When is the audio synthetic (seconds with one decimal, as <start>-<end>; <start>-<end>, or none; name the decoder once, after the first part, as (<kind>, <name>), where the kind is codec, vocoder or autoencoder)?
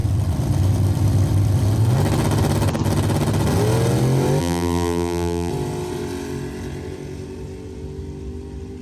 4.4-5.5 (vocoder, BigVGAN v2)